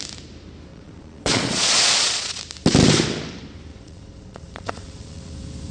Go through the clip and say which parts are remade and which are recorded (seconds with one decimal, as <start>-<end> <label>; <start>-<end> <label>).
0.0-0.7 recorded; 0.7-2.4 remade; 2.4-3.7 recorded; 3.7-5.3 remade; 5.3-5.7 recorded